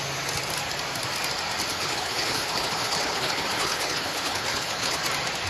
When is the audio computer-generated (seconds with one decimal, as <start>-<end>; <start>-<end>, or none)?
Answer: 1.7-5.0